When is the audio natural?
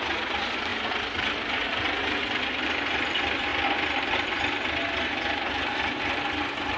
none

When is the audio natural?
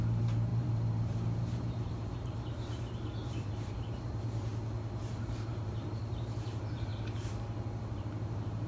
4.5-5.1; 6.9-8.0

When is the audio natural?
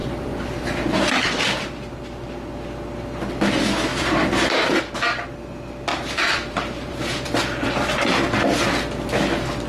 1.2-3.9; 4.8-5.9; 7.4-9.7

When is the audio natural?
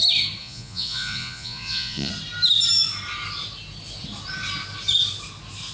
0.0-0.4; 2.1-5.7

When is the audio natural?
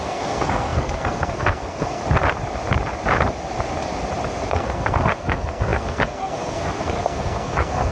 2.0-4.5